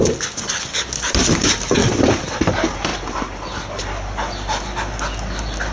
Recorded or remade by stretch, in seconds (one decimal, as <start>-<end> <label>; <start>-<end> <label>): 0.0-1.8 recorded; 1.8-2.4 remade; 2.4-5.7 recorded